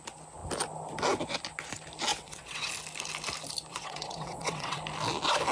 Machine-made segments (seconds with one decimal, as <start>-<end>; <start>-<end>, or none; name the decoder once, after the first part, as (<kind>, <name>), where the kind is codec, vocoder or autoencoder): 2.1-2.7 (vocoder, WaveNeXt); 3.7-4.8